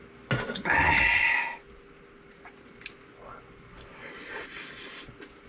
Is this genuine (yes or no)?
yes